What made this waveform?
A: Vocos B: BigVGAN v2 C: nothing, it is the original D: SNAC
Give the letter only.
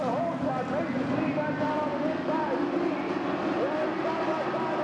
C